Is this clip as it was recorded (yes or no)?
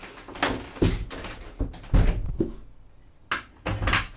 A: yes